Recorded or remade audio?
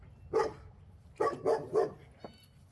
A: recorded